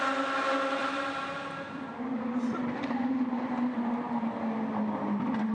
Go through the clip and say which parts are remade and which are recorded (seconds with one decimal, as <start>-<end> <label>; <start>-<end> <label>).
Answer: 0.0-0.8 recorded; 0.8-4.1 remade; 4.1-5.5 recorded